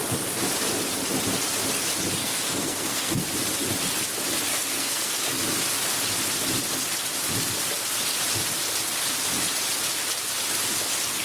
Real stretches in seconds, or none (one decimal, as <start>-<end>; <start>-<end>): 0.0-2.2; 3.3-4.5; 5.4-11.2